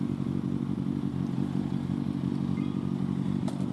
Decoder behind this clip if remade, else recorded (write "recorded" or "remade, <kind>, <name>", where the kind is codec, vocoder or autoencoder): recorded